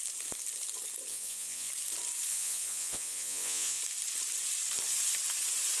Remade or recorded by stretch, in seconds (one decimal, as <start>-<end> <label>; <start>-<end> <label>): 0.0-1.1 recorded; 1.1-1.7 remade; 1.7-2.3 recorded; 2.3-3.8 remade; 3.8-5.8 recorded